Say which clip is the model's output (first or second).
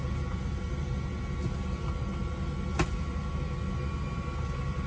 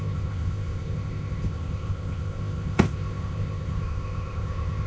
second